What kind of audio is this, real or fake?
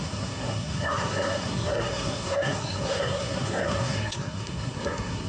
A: fake